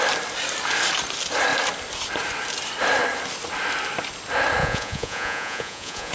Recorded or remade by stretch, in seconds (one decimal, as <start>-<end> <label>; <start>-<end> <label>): 0.0-4.6 recorded; 4.6-6.1 remade